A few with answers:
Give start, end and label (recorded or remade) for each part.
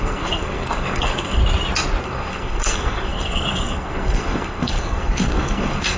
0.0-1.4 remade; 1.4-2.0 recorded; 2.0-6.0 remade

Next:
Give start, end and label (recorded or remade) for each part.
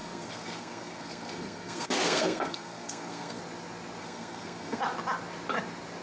0.0-3.4 remade; 3.4-4.0 recorded; 4.0-4.8 remade; 4.8-6.0 recorded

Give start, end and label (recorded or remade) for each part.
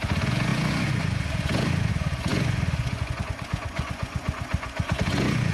0.0-5.5 remade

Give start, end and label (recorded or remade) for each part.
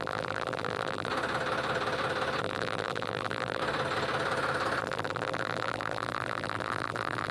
0.0-1.1 remade; 1.1-2.4 recorded; 2.4-3.6 remade; 3.6-4.8 recorded; 4.8-7.3 remade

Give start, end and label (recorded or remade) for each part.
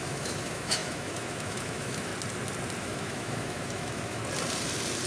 0.0-2.1 remade; 2.1-2.8 recorded; 2.8-4.2 remade; 4.2-5.1 recorded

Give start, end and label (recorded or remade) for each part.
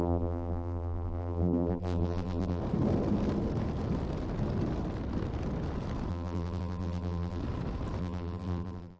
0.0-2.6 remade; 2.6-6.1 recorded; 6.1-7.4 remade; 7.4-8.0 recorded; 8.0-9.0 remade